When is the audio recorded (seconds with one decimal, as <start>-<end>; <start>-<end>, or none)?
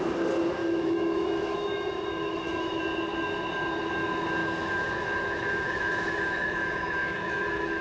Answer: 0.0-0.6; 2.8-4.4